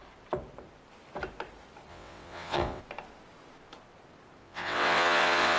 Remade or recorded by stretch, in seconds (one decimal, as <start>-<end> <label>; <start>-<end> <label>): 0.0-1.9 recorded; 1.9-2.8 remade; 2.8-4.4 recorded; 4.4-5.6 remade